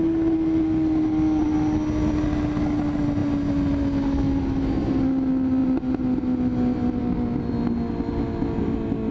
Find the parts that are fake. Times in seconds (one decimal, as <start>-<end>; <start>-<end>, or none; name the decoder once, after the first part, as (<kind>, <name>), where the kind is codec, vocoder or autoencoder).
none